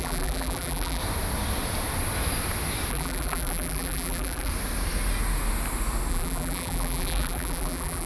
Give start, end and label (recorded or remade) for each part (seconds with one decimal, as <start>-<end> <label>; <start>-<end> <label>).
0.0-1.0 remade; 1.0-2.9 recorded; 2.9-4.5 remade; 4.5-6.1 recorded; 6.1-8.1 remade